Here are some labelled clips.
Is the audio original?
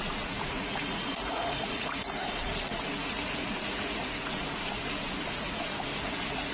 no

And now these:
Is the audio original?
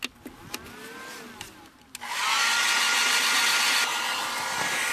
yes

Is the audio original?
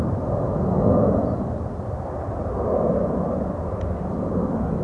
yes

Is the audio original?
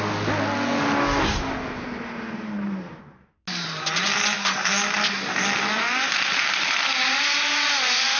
yes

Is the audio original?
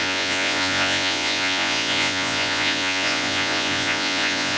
no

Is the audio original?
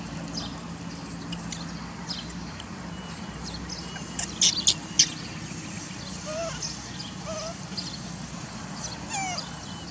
yes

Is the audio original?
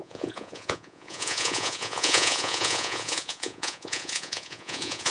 no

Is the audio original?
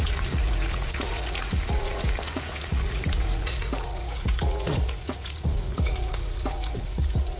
no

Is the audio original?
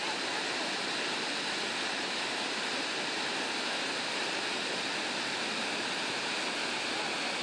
yes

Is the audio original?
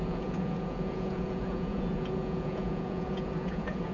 no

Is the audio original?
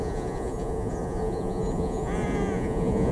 no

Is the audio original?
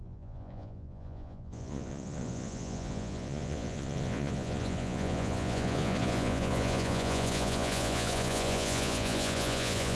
no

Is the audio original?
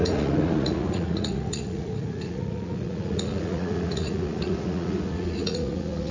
no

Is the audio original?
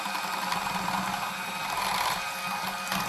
yes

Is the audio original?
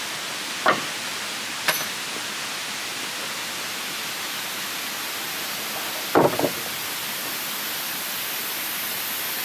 yes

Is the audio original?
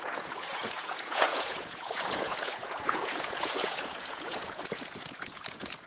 no